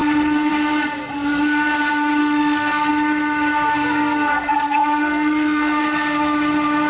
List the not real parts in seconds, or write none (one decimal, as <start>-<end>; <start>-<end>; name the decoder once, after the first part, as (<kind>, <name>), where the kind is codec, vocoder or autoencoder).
0.0-0.5 (codec, SNAC); 2.2-2.9; 4.3-5.8